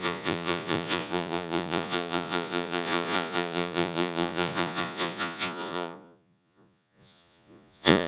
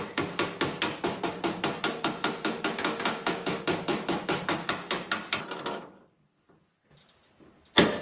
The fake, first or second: first